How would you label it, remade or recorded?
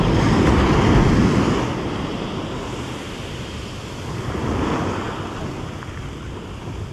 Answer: recorded